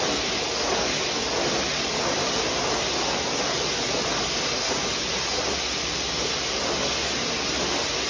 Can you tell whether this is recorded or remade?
recorded